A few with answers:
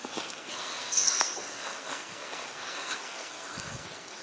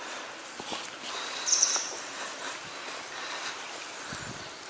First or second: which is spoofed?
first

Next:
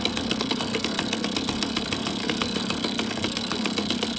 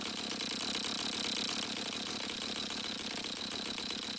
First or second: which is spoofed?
first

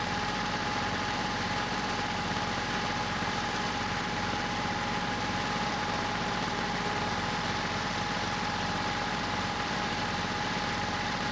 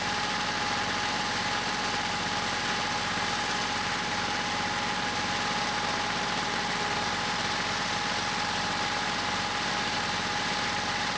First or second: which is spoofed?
first